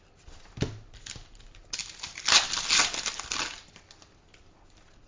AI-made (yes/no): no